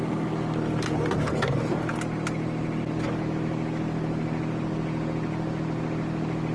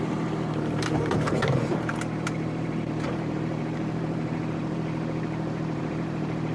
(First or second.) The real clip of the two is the first